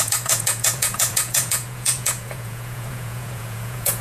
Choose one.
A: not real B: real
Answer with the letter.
A